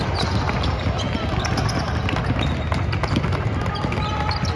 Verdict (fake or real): real